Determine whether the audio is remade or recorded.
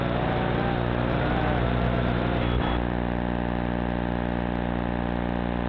recorded